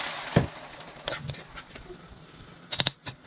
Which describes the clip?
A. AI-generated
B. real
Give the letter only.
B